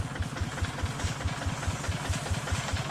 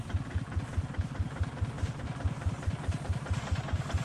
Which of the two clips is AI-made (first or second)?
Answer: second